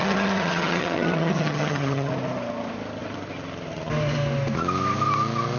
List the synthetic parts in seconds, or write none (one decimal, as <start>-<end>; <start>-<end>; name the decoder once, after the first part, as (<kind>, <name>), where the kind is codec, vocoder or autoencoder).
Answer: 0.0-2.1 (vocoder, HiFi-GAN)